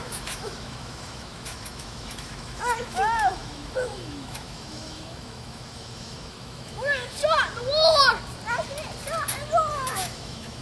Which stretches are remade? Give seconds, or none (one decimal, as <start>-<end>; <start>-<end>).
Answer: 0.0-7.2; 9.7-10.6